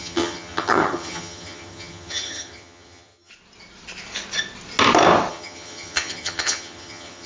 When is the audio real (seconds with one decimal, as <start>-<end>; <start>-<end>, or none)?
3.3-5.3

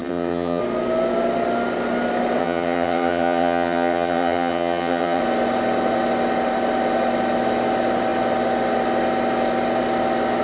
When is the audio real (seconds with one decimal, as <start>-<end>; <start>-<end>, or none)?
0.6-2.4; 5.2-10.4

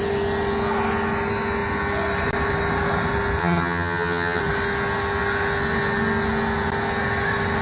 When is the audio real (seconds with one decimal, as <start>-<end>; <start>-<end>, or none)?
0.0-3.4; 4.4-7.6

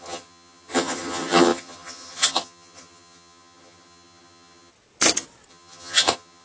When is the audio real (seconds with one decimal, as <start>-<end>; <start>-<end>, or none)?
4.7-5.5

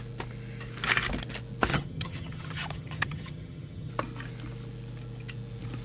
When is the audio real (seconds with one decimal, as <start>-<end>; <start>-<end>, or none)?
0.0-1.7; 3.9-5.8

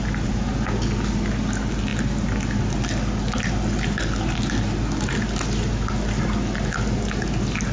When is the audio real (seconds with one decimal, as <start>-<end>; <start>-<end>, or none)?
0.0-7.7

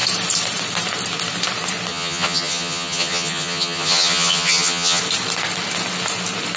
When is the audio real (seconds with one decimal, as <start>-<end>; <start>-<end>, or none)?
0.0-1.9; 5.0-6.6